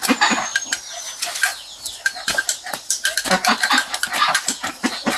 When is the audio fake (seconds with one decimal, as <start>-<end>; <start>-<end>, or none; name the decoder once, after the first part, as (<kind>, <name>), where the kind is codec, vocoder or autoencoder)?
none